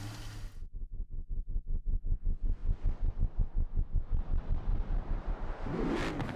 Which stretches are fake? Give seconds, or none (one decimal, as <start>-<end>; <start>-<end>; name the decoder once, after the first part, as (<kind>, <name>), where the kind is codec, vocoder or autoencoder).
4.7-5.3 (vocoder, BigVGAN v2)